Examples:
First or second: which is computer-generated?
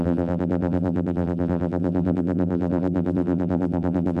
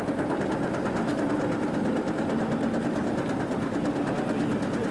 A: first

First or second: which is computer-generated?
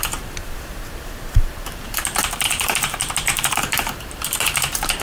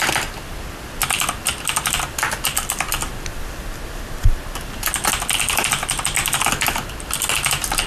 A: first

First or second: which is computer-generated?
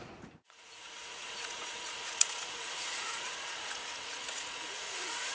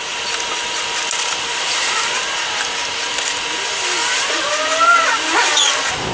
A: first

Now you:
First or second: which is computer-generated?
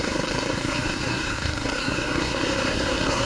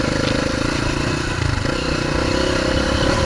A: first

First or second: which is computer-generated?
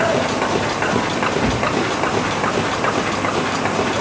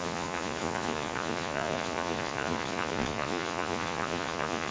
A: second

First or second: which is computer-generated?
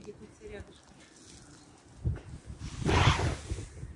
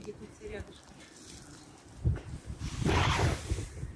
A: second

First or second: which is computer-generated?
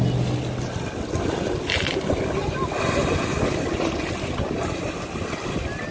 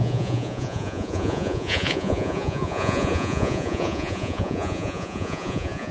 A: second